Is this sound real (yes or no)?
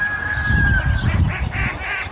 yes